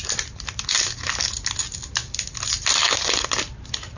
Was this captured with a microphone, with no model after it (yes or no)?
yes